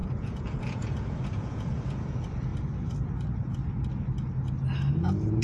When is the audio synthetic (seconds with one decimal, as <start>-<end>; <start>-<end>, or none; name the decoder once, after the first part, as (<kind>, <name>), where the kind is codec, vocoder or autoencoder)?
0.0-2.5 (vocoder, Vocos); 4.9-5.4